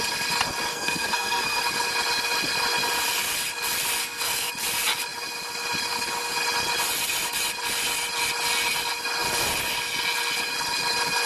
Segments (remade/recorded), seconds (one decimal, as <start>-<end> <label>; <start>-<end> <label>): 0.0-0.7 recorded; 0.7-1.6 remade; 1.6-4.0 recorded; 4.0-4.5 remade; 4.5-11.3 recorded